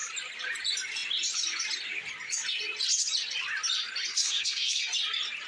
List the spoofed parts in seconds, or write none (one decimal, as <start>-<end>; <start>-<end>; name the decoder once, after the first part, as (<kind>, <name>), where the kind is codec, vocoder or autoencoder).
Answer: 4.1-4.8 (codec, SNAC)